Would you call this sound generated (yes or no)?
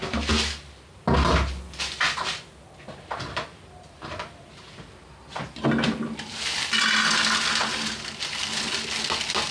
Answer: no